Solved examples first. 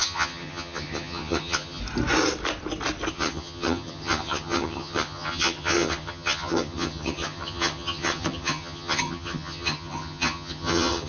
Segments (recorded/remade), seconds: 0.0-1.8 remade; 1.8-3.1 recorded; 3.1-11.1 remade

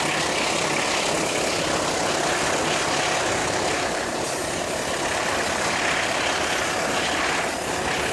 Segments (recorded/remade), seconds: 0.0-3.4 recorded; 3.4-4.6 remade; 4.6-8.1 recorded

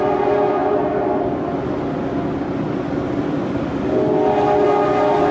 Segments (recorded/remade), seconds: 0.0-5.3 recorded